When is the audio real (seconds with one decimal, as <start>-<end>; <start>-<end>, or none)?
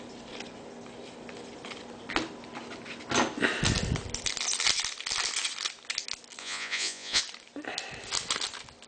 0.0-6.4; 7.2-8.9